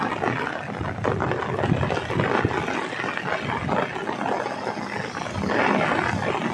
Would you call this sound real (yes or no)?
yes